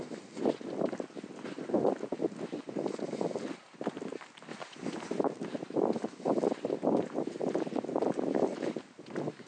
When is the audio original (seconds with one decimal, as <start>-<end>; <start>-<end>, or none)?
0.0-9.5

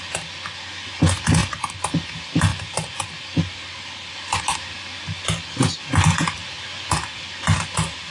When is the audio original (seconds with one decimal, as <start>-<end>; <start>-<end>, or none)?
0.0-8.1

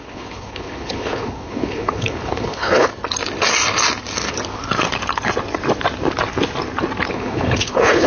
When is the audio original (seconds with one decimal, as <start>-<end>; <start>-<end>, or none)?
2.9-7.1